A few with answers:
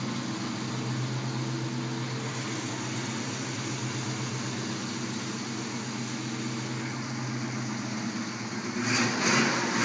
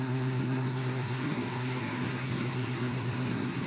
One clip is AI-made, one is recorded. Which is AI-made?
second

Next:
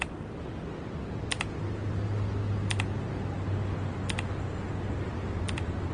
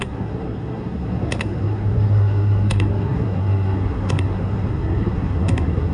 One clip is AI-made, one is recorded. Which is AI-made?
second